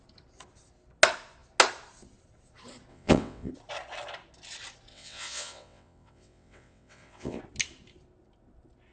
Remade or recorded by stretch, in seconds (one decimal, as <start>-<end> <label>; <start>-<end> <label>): 0.0-2.9 recorded; 2.9-3.5 remade; 3.5-4.9 recorded; 4.9-7.4 remade; 7.4-8.9 recorded